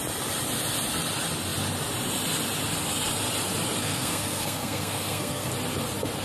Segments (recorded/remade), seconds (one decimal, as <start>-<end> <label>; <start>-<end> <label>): 0.0-3.8 recorded; 3.8-5.5 remade; 5.5-6.2 recorded